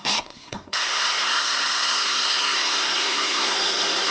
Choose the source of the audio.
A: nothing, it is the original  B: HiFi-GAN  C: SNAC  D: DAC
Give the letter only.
C